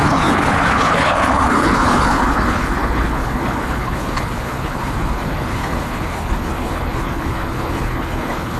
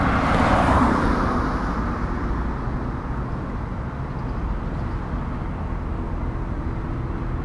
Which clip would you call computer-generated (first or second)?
first